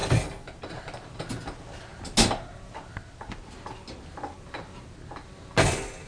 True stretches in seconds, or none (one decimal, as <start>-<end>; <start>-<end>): 0.0-6.1